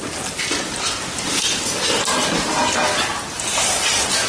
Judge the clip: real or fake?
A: real